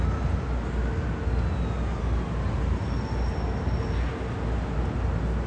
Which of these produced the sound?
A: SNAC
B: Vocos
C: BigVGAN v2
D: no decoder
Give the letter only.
D